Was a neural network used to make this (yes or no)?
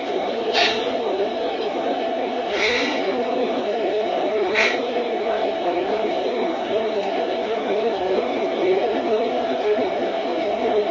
yes